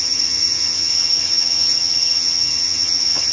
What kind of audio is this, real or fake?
fake